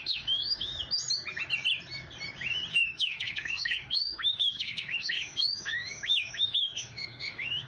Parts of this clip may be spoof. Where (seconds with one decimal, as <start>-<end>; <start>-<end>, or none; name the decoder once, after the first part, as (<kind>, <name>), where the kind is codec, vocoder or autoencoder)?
0.0-0.7 (autoencoder, DAC-VAE); 2.7-7.7